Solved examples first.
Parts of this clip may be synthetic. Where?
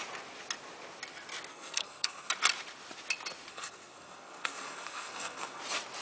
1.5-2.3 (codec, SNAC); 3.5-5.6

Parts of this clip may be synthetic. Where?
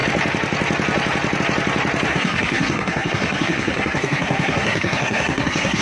2.1-5.8 (codec, SNAC)